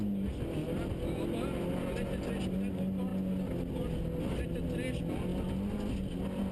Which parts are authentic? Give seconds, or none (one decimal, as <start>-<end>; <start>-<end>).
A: 0.0-6.5